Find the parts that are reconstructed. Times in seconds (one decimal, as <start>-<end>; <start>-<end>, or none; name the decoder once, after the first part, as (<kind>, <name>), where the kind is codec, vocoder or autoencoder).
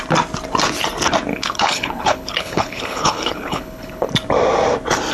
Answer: 1.3-4.1 (codec, HILCodec)